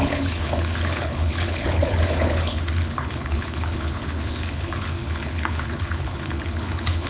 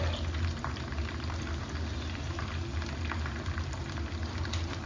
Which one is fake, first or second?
first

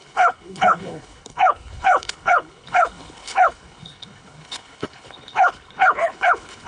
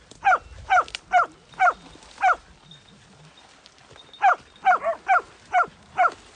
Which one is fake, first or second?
first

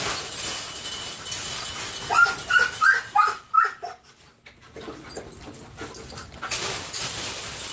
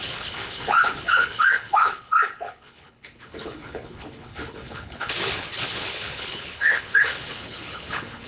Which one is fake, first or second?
second